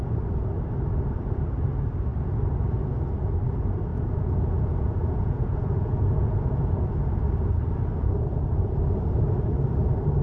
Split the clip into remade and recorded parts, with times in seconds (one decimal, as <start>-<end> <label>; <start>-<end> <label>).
0.0-3.9 recorded; 3.9-6.8 remade; 6.8-10.2 recorded